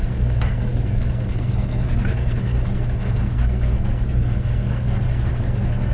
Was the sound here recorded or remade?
remade